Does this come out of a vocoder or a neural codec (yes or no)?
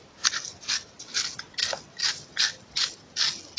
no